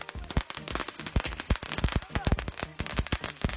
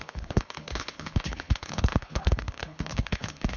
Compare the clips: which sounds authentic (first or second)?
first